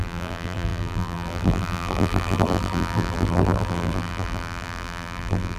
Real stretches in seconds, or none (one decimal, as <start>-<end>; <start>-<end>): none